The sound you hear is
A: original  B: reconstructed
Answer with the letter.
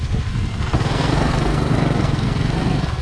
B